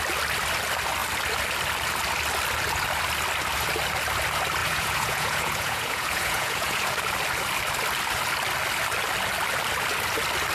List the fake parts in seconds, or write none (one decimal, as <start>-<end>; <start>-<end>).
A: 4.6-7.0